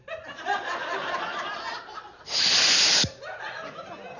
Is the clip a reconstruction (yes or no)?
no